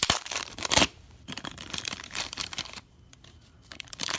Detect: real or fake fake